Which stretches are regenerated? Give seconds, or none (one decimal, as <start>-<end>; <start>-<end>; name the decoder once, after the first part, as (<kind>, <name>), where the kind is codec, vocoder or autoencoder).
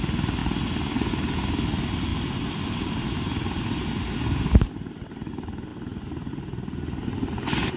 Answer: 0.4-1.1 (vocoder, BigVGAN v2); 2.1-5.3